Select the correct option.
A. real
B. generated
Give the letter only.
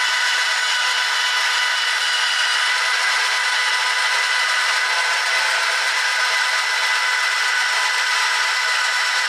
A